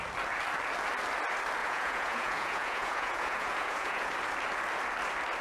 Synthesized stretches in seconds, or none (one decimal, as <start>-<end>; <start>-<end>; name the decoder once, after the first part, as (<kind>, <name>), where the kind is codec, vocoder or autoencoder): 1.6-4.1 (vocoder, Vocos)